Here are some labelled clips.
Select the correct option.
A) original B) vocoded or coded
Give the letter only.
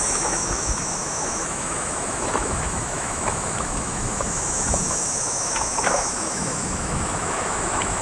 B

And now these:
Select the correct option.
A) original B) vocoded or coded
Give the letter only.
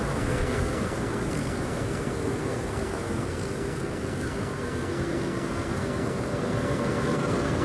B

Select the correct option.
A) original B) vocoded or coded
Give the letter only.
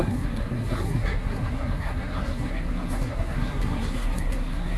B